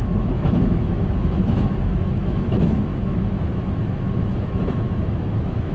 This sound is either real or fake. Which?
fake